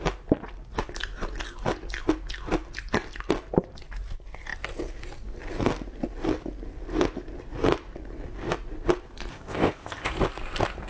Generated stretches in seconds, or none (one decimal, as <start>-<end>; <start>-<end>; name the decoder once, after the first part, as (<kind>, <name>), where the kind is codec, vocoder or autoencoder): 9.3-10.1 (codec, ZipCodec)